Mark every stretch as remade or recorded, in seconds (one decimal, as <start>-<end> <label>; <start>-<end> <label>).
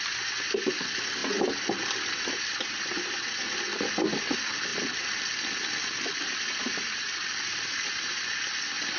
0.0-9.0 recorded